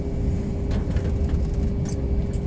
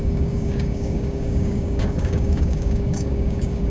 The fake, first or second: second